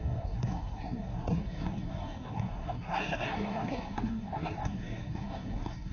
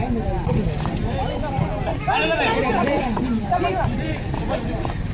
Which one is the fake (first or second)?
first